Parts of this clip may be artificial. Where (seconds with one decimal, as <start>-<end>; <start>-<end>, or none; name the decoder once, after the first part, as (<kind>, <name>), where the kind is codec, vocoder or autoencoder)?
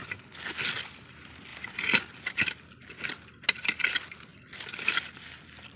1.5-2.0 (vocoder, BigVGAN v2)